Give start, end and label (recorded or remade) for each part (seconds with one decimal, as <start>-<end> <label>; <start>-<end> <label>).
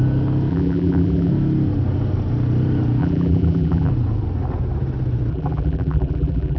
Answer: 0.0-0.5 recorded; 0.5-1.3 remade; 1.3-3.0 recorded; 3.0-3.9 remade; 3.9-5.3 recorded; 5.3-6.6 remade